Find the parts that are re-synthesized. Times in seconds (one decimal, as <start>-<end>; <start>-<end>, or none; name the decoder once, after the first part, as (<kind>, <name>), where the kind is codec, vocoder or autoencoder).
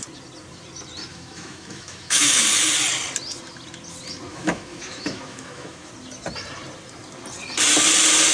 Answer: 1.1-2.4 (autoencoder, DAC-VAE); 4.3-5.9